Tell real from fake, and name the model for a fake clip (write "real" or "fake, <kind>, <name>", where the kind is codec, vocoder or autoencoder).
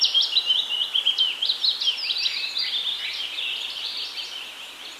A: real